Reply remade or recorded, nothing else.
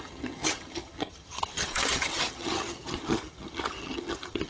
remade